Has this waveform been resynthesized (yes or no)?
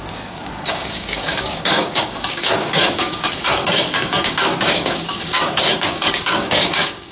yes